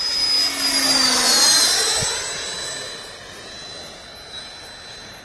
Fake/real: real